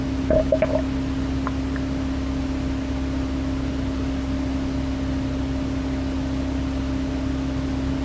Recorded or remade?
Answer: recorded